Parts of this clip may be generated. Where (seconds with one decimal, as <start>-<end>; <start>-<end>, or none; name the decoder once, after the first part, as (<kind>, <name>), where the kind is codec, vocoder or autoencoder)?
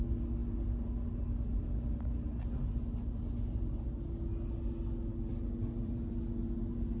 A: none